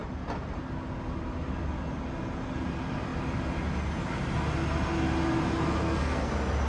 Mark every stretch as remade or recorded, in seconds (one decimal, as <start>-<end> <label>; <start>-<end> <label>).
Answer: 0.0-5.8 recorded; 5.8-6.3 remade; 6.3-6.7 recorded